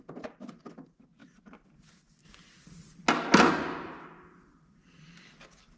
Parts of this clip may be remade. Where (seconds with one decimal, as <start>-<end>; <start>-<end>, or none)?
none